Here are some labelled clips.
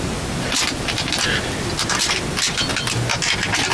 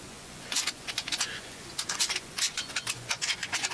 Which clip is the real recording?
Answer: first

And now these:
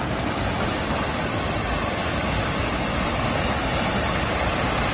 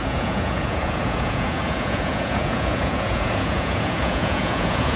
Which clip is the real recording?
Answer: first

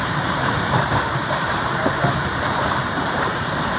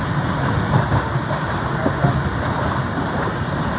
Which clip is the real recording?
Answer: second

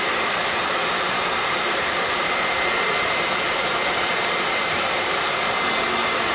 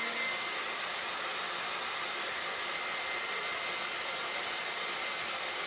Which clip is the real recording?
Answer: second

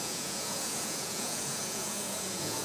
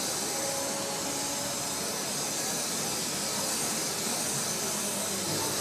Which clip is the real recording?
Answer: second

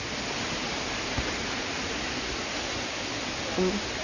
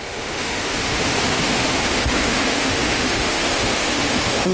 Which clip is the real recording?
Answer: first